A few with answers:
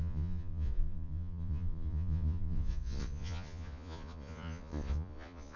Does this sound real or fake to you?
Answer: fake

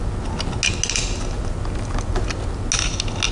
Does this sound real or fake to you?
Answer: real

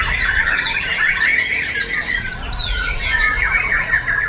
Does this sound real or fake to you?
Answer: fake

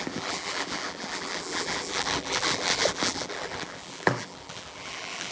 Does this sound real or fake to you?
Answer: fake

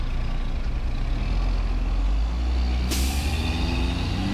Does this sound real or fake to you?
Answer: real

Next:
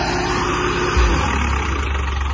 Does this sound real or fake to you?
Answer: real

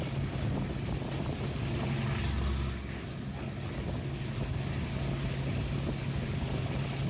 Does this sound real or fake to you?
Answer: real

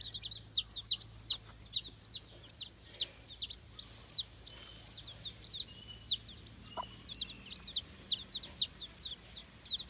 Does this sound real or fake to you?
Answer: real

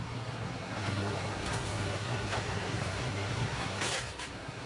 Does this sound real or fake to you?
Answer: fake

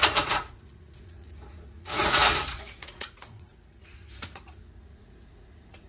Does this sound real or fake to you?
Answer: fake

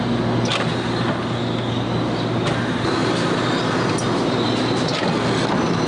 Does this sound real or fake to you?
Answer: real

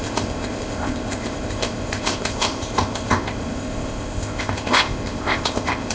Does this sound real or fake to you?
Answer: fake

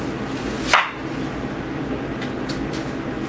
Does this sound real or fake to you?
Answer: real